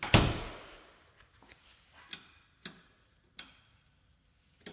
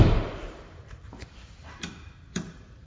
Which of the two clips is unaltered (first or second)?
first